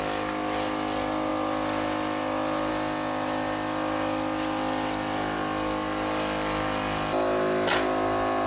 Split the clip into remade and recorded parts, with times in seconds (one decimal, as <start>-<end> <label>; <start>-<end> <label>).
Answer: 0.0-8.5 recorded